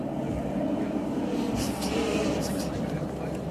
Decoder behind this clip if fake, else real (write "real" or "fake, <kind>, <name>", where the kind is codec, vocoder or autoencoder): real